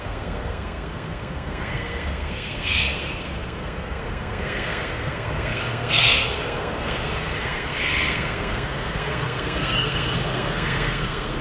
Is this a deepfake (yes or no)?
yes